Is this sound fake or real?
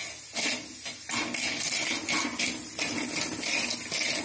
real